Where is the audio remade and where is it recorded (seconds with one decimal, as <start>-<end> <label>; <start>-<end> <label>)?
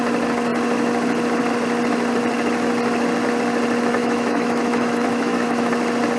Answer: 0.0-4.0 recorded; 4.0-5.7 remade; 5.7-6.2 recorded